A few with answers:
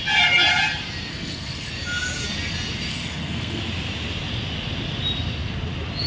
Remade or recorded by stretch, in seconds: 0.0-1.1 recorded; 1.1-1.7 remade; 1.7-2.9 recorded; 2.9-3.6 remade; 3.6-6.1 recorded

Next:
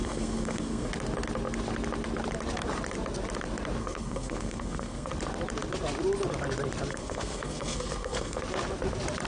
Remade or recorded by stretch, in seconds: 0.0-0.9 remade; 0.9-3.8 recorded; 3.8-5.1 remade; 5.1-6.9 recorded; 6.9-8.4 remade; 8.4-9.3 recorded

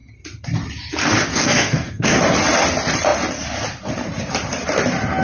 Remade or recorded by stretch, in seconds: 0.0-1.3 recorded; 1.3-2.2 remade; 2.2-5.2 recorded